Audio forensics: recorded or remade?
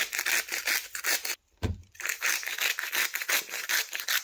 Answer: recorded